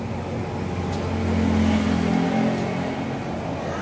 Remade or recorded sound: recorded